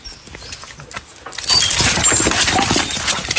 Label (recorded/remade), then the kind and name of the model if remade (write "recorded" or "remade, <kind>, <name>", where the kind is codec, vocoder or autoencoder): recorded